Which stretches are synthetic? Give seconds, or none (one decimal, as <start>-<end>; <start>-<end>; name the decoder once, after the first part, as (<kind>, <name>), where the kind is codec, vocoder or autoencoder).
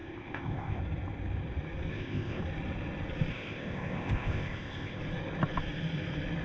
0.0-0.8 (codec, ZipCodec); 1.9-2.4; 3.3-5.0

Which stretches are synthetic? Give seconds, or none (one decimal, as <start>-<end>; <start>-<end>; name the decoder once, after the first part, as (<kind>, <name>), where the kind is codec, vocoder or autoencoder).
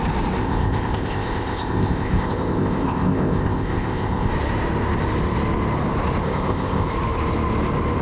0.4-4.3 (codec, ZipCodec); 6.2-6.9